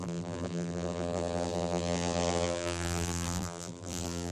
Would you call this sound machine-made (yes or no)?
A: yes